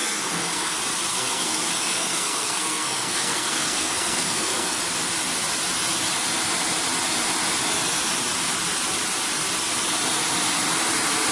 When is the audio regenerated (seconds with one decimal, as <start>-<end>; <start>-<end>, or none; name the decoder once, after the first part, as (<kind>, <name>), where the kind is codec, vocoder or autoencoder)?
0.0-0.7 (codec, SNAC); 1.1-4.8